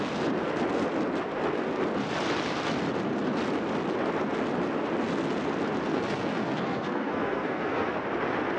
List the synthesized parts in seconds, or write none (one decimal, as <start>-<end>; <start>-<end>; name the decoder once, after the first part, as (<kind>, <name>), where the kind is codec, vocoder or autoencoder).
5.9-7.9 (codec, SNAC)